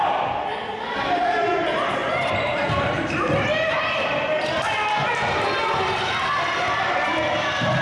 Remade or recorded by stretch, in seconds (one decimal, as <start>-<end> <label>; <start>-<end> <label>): 0.0-7.8 recorded

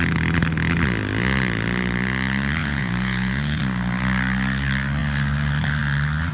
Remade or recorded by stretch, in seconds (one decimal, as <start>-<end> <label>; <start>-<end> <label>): 0.0-2.6 recorded; 2.6-3.6 remade; 3.6-6.3 recorded

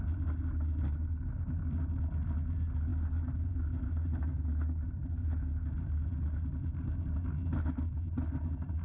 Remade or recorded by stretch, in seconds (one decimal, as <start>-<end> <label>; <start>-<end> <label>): 0.0-8.8 recorded